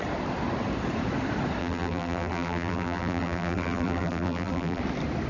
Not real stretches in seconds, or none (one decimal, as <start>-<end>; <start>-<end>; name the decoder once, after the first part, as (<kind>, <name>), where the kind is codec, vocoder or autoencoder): 1.6-4.8 (vocoder, BigVGAN v2)

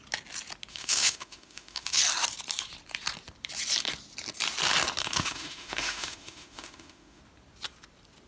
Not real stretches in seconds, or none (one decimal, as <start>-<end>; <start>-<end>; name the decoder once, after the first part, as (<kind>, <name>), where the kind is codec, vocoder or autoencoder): 0.7-2.0 (autoencoder, DAC-VAE); 5.0-7.2

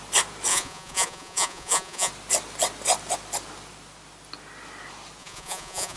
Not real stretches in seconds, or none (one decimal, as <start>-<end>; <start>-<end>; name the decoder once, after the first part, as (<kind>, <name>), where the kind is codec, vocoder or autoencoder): 0.5-2.1 (vocoder, Vocos); 5.2-6.0